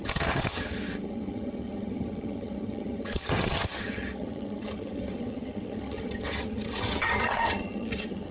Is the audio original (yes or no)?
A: no